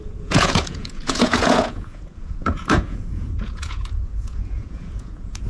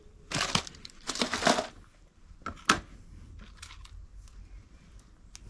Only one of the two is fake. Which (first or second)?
first